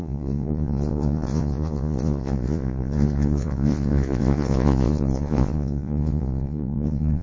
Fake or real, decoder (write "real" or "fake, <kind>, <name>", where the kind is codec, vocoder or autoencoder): fake, vocoder, Vocos